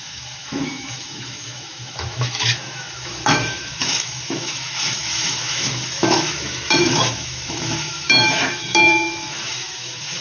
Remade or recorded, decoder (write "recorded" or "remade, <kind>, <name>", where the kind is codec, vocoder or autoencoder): remade, autoencoder, DAC-VAE